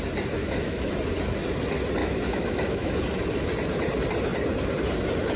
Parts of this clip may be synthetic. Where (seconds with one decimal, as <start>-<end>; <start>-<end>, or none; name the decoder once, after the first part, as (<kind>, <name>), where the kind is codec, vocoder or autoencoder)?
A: 0.4-0.9 (autoencoder, DAC-VAE); 2.0-3.0